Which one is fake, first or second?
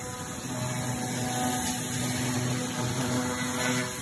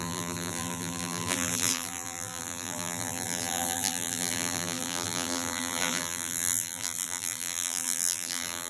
second